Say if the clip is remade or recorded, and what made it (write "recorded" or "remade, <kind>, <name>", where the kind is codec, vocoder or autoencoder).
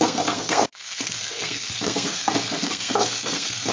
remade, codec, SNAC